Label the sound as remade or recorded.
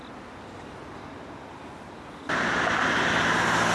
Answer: recorded